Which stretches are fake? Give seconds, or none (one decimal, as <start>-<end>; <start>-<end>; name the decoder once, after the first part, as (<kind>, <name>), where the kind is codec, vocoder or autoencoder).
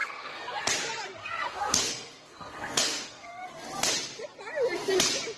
0.0-0.7 (codec, SNAC); 1.2-3.5